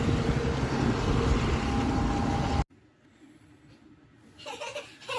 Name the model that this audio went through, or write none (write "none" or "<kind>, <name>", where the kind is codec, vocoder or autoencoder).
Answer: none